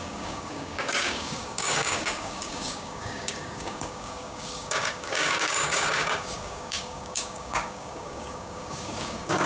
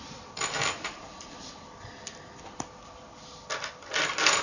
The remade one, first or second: first